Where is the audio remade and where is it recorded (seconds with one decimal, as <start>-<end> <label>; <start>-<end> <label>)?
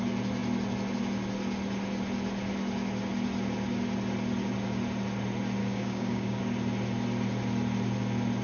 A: 0.0-5.6 recorded; 5.6-6.4 remade; 6.4-8.4 recorded